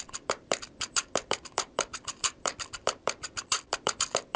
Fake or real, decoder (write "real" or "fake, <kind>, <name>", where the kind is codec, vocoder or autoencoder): fake, vocoder, BigVGAN v2